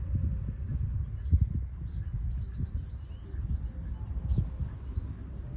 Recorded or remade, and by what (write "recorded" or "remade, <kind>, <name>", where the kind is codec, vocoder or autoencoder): recorded